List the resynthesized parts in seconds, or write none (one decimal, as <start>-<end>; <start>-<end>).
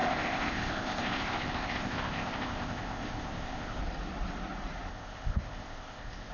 0.0-3.8; 4.9-6.3